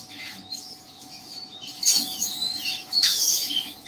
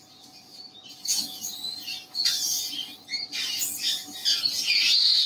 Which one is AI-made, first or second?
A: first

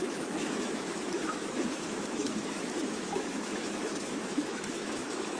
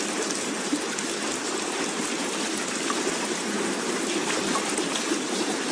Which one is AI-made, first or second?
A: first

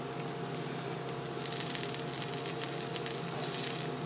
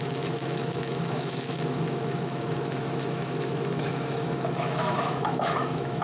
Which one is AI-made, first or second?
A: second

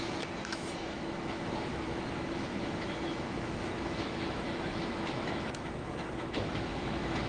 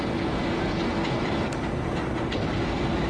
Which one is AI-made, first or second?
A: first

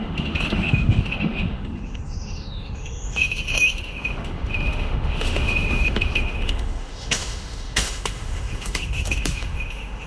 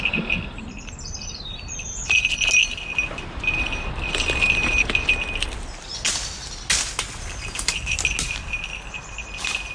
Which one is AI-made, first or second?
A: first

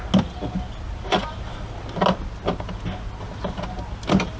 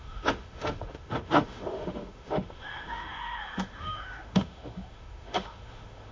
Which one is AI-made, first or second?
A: second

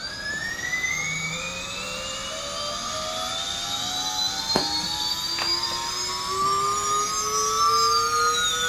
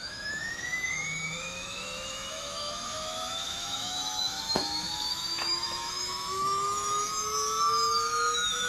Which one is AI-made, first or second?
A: second